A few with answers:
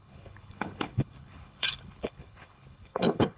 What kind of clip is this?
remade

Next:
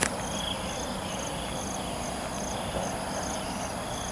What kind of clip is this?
recorded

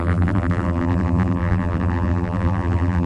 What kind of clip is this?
remade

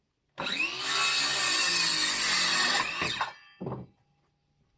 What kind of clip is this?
recorded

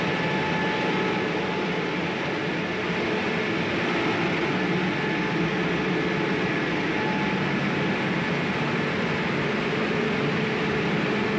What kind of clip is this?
recorded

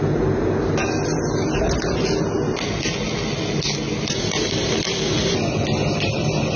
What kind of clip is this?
recorded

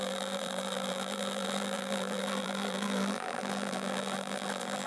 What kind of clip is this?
remade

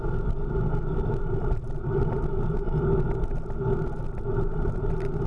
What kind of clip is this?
recorded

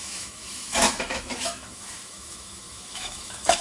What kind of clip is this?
remade